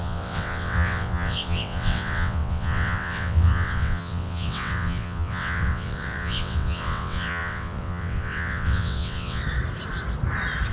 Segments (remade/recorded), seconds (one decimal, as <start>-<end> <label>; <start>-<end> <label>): 0.0-9.4 remade; 9.4-10.7 recorded